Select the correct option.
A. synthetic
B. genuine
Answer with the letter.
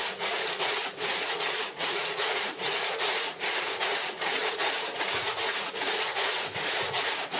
A